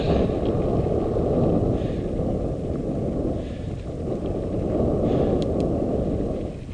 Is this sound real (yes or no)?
yes